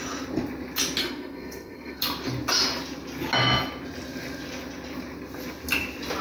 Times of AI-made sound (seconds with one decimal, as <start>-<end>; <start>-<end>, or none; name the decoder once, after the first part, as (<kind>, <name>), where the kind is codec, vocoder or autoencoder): 1.0-2.0 (codec, SNAC)